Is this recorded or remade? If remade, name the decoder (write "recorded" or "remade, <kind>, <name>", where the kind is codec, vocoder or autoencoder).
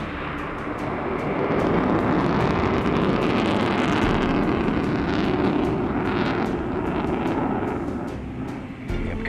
recorded